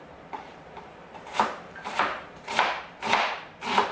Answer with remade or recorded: remade